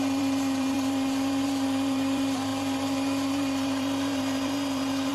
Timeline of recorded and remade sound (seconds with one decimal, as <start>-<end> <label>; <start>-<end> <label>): 0.0-5.1 remade